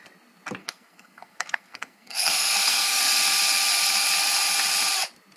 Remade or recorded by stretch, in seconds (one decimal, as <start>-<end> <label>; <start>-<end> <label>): 0.0-0.6 recorded; 0.6-3.0 remade; 3.0-5.4 recorded